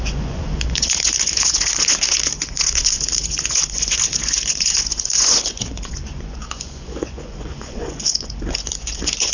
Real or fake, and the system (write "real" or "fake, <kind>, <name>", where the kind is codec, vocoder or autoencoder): fake, vocoder, Vocos